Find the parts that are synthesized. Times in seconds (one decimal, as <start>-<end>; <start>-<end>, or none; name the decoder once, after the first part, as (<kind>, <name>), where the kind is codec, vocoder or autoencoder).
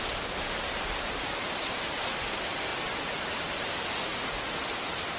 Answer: 4.0-4.6 (vocoder, Vocos)